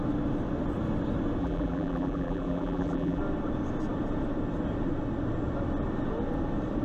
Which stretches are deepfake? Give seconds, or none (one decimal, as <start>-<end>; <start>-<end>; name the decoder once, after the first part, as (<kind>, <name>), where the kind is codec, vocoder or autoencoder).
1.4-3.2 (vocoder, BigVGAN v2)